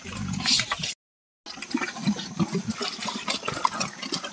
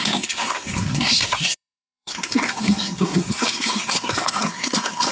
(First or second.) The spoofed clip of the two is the second